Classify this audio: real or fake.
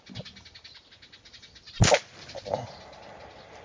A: real